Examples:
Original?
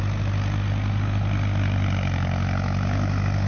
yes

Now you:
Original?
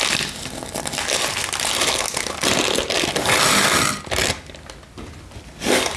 yes